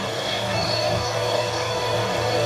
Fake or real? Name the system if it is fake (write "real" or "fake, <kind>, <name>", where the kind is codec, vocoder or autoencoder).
fake, codec, DAC